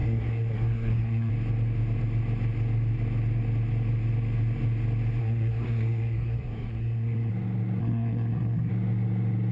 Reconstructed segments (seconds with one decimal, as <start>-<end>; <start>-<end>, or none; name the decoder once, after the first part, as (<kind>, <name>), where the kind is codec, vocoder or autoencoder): 0.0-1.3 (codec, SNAC); 5.2-7.3; 7.8-8.7